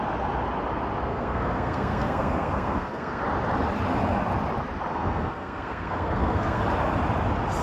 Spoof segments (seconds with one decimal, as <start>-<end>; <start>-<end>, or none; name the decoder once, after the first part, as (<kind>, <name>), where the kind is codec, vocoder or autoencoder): 1.1-3.2 (codec, SNAC); 4.9-6.6